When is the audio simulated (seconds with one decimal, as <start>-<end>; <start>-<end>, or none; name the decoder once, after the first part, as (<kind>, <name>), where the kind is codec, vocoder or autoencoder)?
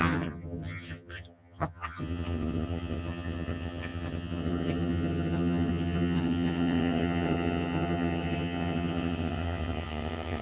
0.0-10.4 (vocoder, HiFi-GAN)